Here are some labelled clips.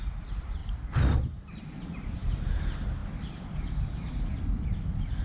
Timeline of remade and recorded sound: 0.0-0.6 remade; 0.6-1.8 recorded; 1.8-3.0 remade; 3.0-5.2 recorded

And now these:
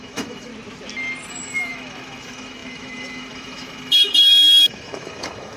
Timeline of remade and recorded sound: 0.0-0.5 remade; 0.5-1.3 recorded; 1.3-5.6 remade

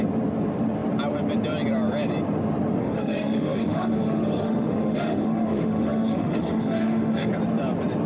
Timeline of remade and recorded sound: 0.0-2.8 recorded; 2.8-7.3 remade; 7.3-8.1 recorded

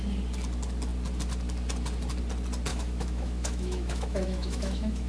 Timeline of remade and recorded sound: 0.0-2.7 recorded; 2.7-5.1 remade

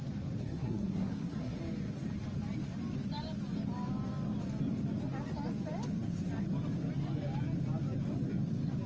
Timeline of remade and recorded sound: 0.0-0.4 recorded; 0.4-1.6 remade; 1.6-8.9 recorded

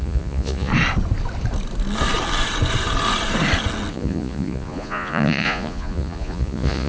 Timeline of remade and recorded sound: 0.0-0.7 remade; 0.7-3.9 recorded; 3.9-6.9 remade

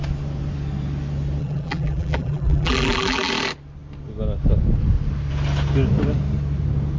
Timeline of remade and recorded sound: 0.0-1.4 recorded; 1.4-3.3 remade; 3.3-7.0 recorded

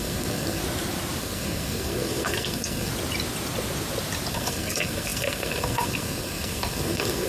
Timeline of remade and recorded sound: 0.0-0.6 remade; 0.6-1.2 recorded; 1.2-2.9 remade; 2.9-4.3 recorded; 4.3-7.3 remade